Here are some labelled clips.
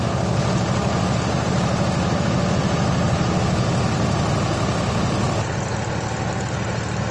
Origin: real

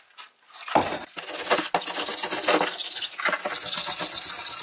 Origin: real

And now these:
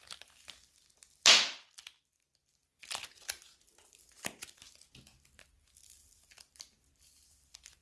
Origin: real